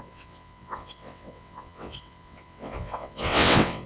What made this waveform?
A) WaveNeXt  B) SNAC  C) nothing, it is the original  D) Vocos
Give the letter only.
A